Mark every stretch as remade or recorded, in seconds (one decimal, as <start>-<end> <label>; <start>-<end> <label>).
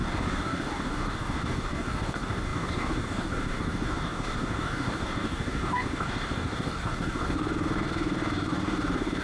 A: 0.0-9.2 remade